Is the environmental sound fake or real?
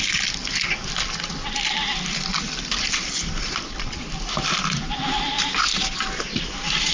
fake